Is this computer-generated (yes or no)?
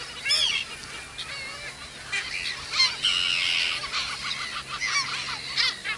no